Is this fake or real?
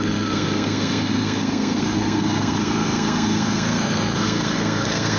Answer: fake